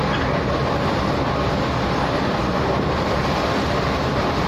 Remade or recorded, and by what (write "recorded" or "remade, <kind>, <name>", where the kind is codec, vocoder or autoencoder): recorded